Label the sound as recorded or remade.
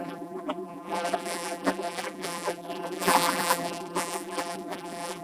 remade